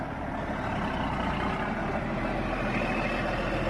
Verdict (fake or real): real